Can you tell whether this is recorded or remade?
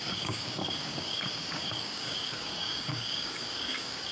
remade